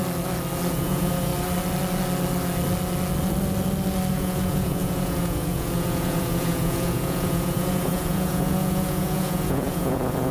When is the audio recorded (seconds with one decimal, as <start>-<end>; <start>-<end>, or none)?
0.0-0.7; 1.3-4.1